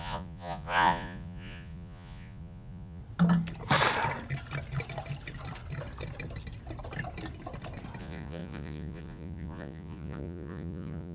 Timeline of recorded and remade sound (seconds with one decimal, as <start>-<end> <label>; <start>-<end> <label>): 0.0-3.0 remade; 3.0-8.0 recorded; 8.0-11.1 remade